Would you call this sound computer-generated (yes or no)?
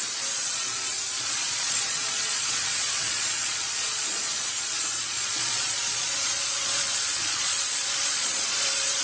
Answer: yes